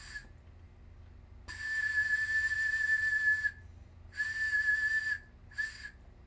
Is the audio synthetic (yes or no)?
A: no